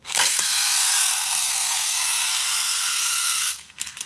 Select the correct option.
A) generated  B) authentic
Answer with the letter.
A